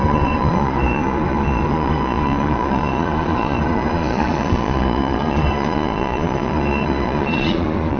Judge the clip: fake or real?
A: fake